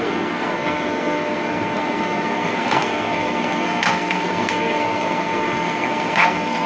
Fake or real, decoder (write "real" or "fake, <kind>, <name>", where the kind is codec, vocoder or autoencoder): fake, codec, SNAC